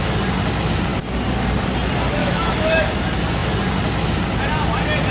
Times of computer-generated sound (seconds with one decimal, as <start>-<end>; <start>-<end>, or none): 2.2-2.9